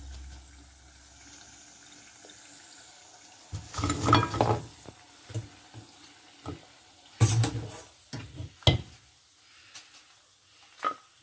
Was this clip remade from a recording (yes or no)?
no